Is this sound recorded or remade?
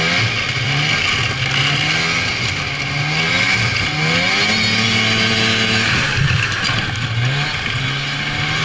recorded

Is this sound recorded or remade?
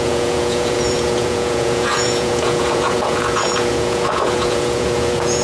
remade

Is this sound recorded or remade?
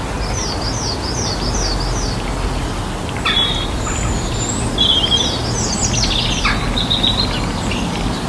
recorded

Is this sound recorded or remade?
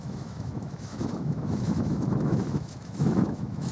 remade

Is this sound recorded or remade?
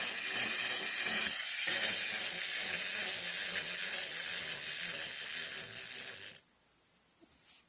recorded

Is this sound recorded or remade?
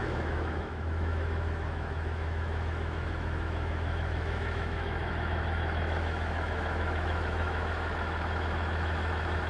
remade